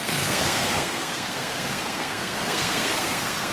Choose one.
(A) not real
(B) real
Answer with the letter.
A